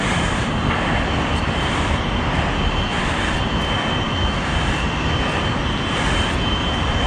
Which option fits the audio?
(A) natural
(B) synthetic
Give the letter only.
A